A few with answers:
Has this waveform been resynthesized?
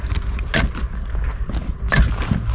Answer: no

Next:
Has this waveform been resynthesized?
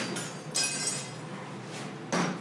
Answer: no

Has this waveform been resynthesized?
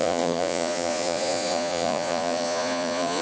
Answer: yes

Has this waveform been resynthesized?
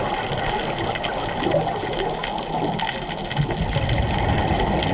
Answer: no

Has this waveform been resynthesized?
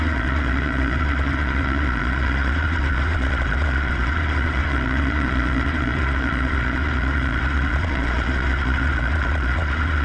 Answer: yes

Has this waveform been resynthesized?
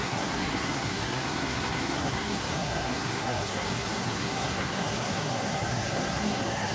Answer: yes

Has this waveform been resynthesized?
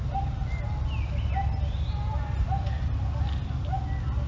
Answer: no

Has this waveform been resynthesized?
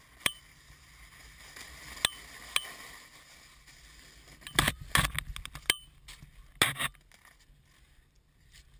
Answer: no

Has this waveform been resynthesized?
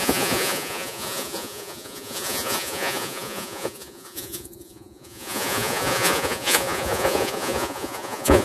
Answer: yes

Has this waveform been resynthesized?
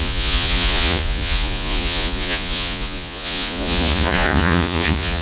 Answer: yes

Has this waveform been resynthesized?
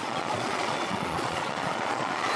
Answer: yes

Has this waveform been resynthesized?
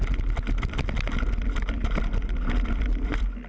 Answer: no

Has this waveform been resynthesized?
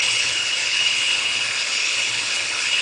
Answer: yes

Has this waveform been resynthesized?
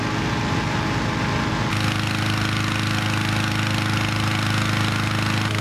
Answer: no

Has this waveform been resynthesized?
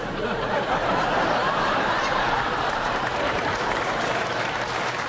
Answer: yes